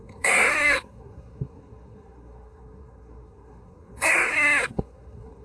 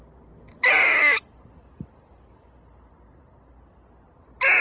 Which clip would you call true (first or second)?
second